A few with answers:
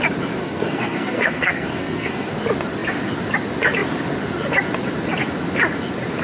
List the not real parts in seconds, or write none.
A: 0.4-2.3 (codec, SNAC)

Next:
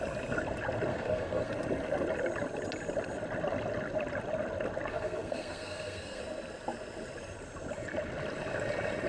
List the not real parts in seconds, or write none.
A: 0.9-1.5 (codec, SNAC); 4.9-6.2

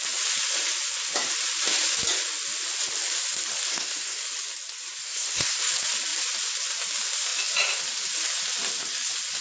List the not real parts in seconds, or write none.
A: 3.7-4.2 (codec, SNAC); 5.0-5.6

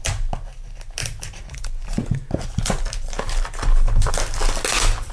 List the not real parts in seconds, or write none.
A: none

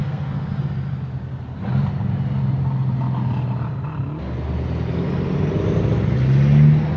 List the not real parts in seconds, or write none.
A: 0.0-0.6 (codec, SNAC)

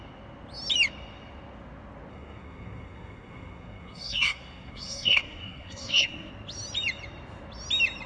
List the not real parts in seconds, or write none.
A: 2.1-6.3 (codec, SNAC)